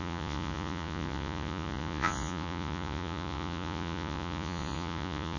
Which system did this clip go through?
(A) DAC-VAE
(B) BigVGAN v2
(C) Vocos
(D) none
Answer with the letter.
C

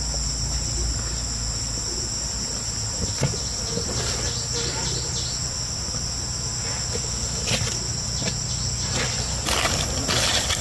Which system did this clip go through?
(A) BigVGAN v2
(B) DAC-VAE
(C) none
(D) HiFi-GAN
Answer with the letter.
C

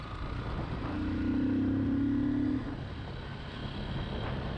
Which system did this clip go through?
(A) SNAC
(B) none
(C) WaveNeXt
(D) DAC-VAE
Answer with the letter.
B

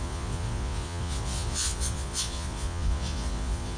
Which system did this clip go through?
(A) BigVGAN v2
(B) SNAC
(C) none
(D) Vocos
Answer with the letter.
D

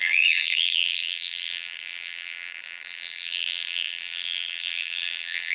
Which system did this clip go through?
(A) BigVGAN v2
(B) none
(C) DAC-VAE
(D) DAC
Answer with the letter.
A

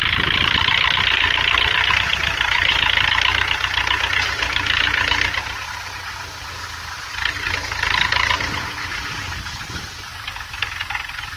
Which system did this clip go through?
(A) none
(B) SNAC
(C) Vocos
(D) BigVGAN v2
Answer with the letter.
D